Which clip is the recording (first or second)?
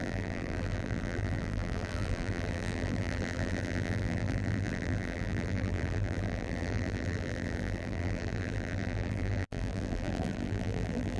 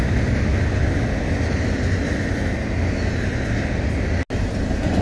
second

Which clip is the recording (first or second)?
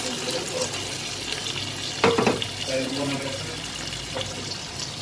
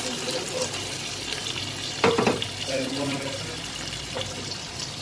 first